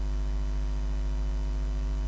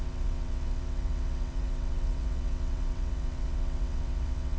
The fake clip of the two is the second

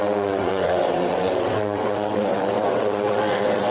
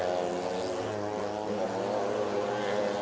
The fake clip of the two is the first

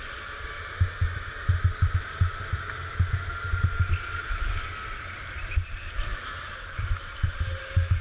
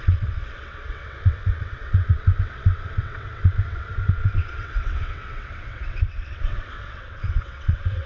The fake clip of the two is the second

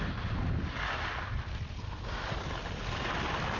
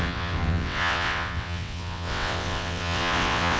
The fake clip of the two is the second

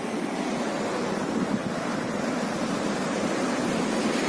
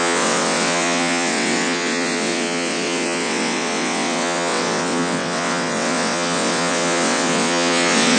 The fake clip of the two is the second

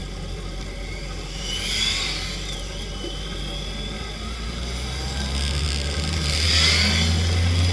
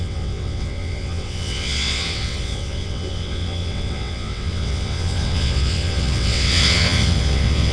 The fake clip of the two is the second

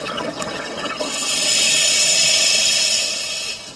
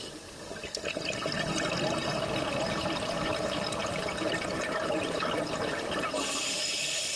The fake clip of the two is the first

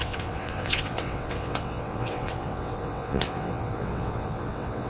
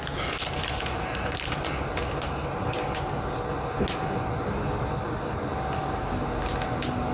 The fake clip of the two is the first